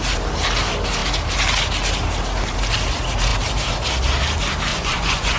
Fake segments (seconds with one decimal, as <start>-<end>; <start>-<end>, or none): 4.7-5.4